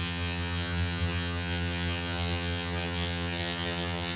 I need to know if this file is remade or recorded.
remade